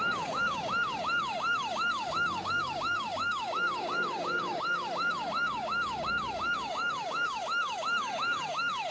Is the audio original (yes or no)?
no